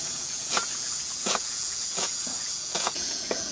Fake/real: fake